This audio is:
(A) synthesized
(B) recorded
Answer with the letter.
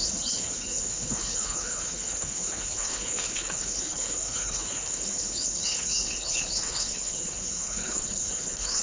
A